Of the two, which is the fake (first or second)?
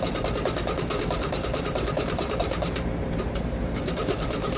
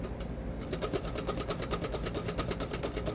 first